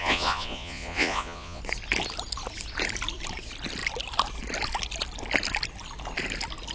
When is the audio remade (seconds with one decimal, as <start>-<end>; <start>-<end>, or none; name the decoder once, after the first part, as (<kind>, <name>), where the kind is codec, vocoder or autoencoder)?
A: 0.0-1.6 (vocoder, Vocos)